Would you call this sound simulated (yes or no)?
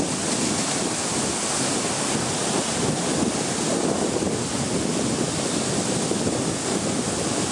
no